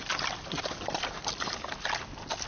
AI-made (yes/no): no